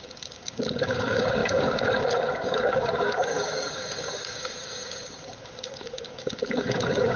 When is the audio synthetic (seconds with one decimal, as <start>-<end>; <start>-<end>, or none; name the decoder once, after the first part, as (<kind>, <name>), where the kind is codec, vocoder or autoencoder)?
0.0-7.2 (codec, DAC)